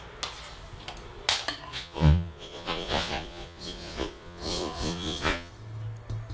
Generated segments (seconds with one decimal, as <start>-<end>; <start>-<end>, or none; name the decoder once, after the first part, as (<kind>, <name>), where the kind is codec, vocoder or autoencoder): 1.7-5.5 (vocoder, Vocos)